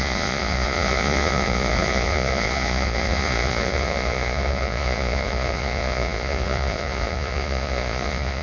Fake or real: fake